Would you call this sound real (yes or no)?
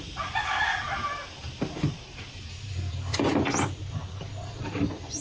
yes